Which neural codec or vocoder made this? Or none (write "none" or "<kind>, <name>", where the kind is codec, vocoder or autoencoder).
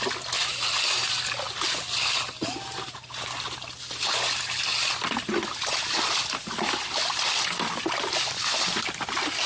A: none